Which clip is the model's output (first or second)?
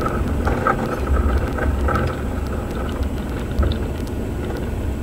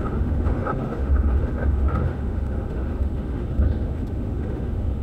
second